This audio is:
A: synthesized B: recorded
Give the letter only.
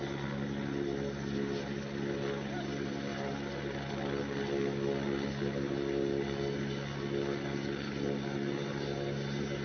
B